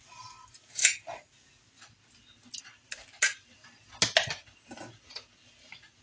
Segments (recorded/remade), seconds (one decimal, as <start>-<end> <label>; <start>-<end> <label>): 0.0-6.0 recorded